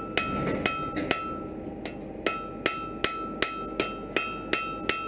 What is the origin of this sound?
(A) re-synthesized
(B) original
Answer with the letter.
B